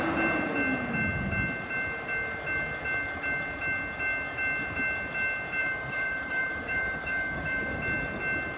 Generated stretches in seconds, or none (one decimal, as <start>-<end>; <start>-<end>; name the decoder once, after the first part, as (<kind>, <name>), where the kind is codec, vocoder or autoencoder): 5.6-7.8 (codec, DAC)